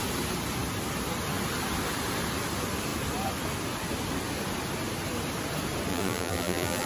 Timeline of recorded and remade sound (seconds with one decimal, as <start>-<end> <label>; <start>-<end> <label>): 0.0-5.9 recorded; 5.9-6.9 remade